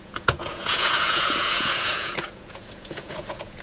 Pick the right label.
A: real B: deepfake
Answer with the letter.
B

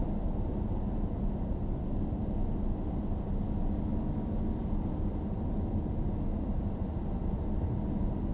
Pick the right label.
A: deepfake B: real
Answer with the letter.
B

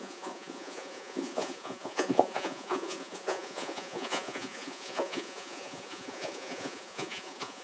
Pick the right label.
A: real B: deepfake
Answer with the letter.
B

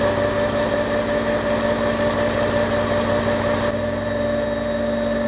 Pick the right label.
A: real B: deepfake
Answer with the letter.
A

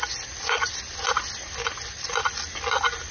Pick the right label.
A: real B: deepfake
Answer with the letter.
A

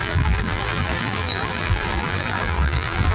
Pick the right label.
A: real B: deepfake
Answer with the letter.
B